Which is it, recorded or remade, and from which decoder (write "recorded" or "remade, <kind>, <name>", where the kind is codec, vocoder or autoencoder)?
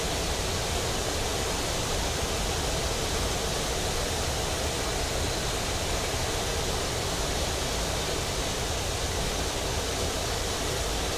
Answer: recorded